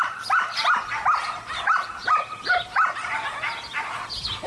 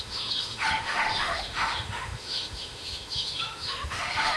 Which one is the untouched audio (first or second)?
first